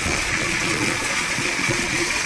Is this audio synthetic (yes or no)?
yes